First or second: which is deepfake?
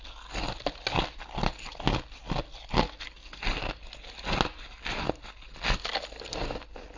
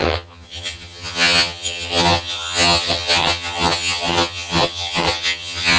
second